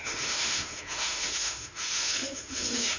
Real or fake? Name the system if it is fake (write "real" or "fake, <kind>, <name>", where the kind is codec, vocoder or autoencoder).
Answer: fake, autoencoder, DAC-VAE